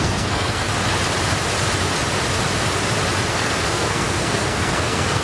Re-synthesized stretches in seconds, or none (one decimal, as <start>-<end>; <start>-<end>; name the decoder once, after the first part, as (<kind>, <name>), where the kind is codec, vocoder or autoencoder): 0.0-0.7 (codec, SNAC); 3.3-5.2